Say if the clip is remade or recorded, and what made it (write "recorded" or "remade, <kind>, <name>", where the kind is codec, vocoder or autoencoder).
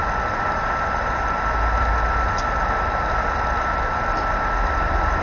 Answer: remade, vocoder, BigVGAN v2